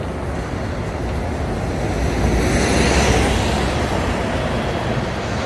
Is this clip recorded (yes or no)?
yes